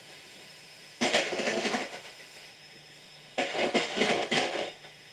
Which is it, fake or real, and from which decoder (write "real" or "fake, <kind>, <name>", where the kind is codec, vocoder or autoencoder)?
fake, autoencoder, DAC-VAE